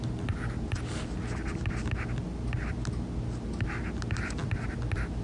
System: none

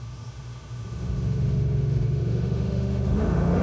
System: autoencoder, DAC-VAE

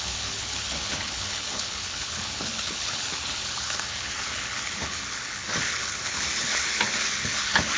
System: codec, HILCodec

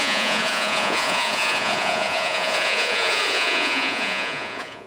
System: vocoder, Vocos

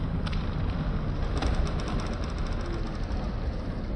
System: none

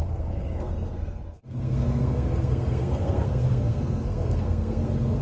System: codec, SNAC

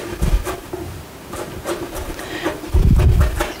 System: none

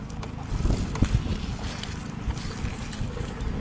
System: none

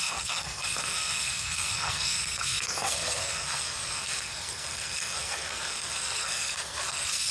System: codec, SNAC